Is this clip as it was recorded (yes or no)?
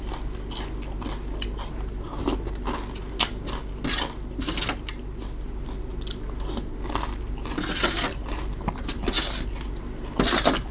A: yes